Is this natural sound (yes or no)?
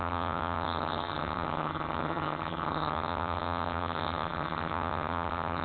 no